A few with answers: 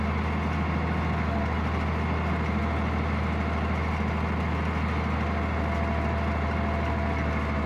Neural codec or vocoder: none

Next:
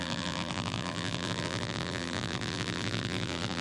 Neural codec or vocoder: vocoder, BigVGAN v2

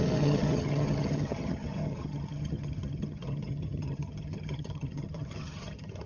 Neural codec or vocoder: vocoder, HiFi-GAN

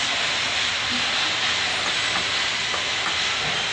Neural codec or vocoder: none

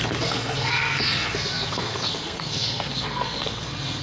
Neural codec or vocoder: codec, SNAC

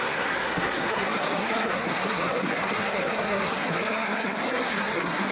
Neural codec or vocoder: codec, SNAC